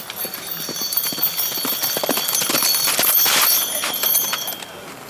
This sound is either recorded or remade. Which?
recorded